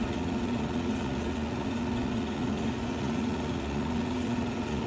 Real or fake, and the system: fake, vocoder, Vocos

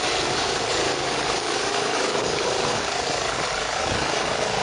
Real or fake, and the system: fake, codec, DAC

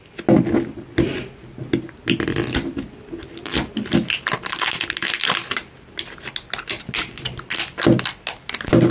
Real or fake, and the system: real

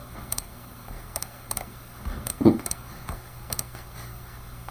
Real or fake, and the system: fake, codec, SNAC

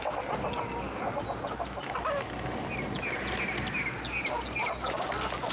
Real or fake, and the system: real